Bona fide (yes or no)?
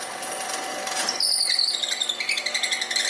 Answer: yes